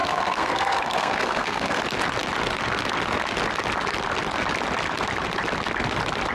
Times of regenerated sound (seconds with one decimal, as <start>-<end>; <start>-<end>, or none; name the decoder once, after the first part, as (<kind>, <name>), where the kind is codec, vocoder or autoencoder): 0.0-1.8 (codec, SNAC)